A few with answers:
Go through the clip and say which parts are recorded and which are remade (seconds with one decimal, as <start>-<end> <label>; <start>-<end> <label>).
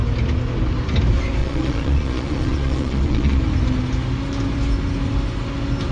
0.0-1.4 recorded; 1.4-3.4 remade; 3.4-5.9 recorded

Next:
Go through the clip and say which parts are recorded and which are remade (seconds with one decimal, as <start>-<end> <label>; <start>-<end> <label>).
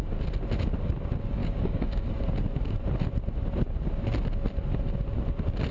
0.0-1.4 recorded; 1.4-2.1 remade; 2.1-5.7 recorded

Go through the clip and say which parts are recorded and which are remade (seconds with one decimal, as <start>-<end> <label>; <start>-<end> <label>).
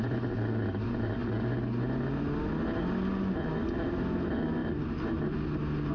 0.0-5.9 recorded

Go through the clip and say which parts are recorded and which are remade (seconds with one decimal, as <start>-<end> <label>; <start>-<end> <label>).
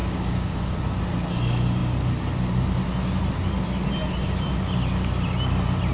0.0-0.6 remade; 0.6-5.9 recorded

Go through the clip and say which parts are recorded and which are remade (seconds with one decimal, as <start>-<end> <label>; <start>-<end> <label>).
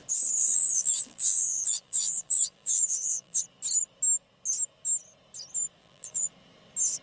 0.0-0.4 recorded; 0.4-3.4 remade; 3.4-5.8 recorded; 5.8-6.3 remade; 6.3-7.0 recorded